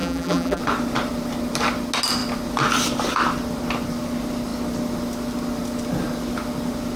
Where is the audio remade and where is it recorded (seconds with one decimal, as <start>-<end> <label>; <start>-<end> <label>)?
0.0-0.6 remade; 0.6-7.0 recorded